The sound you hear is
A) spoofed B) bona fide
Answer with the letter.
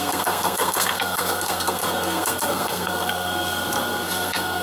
A